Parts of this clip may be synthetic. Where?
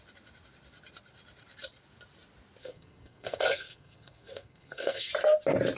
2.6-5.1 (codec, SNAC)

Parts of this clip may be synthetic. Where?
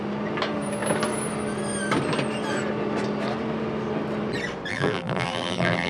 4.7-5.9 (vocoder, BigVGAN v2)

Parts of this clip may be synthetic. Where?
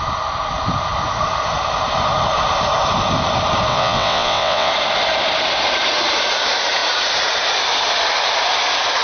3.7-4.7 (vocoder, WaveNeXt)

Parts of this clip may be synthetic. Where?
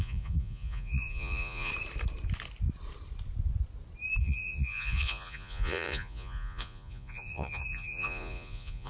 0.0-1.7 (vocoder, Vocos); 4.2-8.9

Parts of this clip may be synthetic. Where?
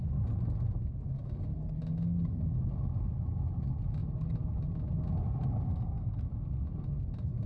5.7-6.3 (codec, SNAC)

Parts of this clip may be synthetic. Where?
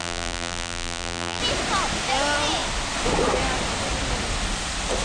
0.0-1.4 (vocoder, BigVGAN v2)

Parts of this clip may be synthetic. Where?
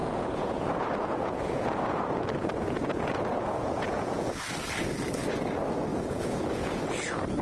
0.0-4.4 (vocoder, Vocos); 5.9-6.8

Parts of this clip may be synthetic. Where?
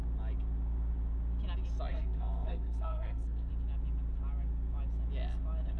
1.9-3.5 (codec, SNAC)